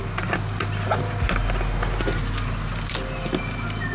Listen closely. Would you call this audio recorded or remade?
recorded